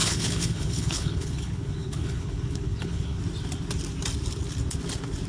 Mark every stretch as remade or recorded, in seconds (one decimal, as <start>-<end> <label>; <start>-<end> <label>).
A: 0.0-3.2 remade; 3.2-5.3 recorded